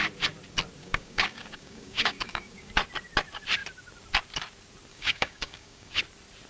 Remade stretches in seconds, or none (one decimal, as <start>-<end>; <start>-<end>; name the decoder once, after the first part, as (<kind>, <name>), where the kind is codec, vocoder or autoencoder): 0.8-2.7 (codec, DAC); 4.9-6.0